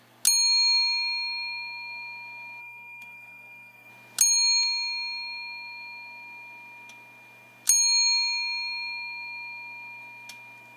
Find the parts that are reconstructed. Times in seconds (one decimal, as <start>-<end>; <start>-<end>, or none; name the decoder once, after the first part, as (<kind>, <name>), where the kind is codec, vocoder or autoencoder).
2.6-3.9 (codec, SNAC)